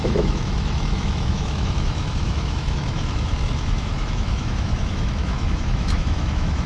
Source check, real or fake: fake